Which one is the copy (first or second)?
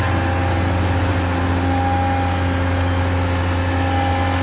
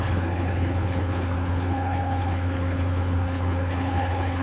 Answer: second